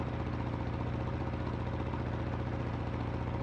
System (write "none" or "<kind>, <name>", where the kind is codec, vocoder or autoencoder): none